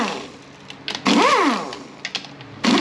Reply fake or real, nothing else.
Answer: real